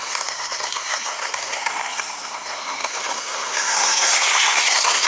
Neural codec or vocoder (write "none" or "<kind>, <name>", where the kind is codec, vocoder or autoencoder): codec, SNAC